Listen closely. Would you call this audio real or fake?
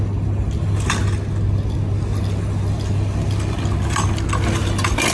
real